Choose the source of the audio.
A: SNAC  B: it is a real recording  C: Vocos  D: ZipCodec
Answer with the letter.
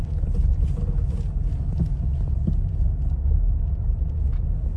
B